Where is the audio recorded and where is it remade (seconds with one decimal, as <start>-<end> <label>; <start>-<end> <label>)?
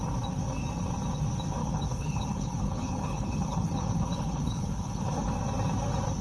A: 0.0-1.6 recorded; 1.6-5.3 remade; 5.3-6.2 recorded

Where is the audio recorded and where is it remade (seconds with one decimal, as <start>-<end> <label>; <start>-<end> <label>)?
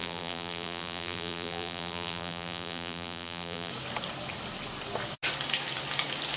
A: 0.0-3.7 remade; 3.7-6.4 recorded